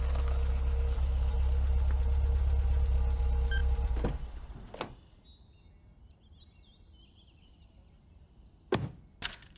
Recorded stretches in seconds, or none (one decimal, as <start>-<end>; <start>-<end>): 0.0-9.6